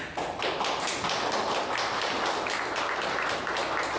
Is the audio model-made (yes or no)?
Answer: no